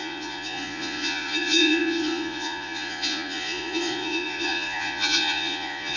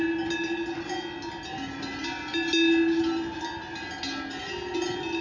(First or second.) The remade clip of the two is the first